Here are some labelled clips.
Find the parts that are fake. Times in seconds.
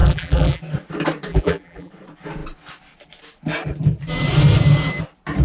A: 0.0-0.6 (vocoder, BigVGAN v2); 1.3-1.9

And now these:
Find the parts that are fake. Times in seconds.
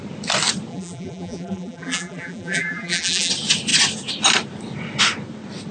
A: 0.7-3.3 (vocoder, BigVGAN v2)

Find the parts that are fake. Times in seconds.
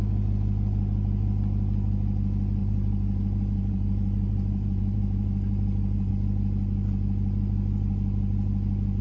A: 2.6-6.1 (vocoder, BigVGAN v2)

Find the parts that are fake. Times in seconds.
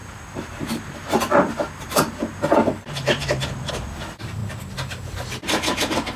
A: 0.0-3.7 (vocoder, BigVGAN v2)